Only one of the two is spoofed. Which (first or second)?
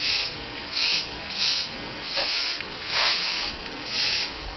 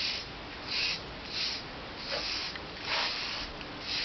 first